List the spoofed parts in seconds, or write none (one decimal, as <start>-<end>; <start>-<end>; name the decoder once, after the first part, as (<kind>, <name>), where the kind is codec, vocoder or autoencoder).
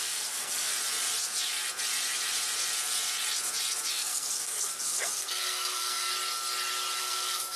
0.0-0.7 (codec, SNAC); 3.9-6.1; 7.0-7.6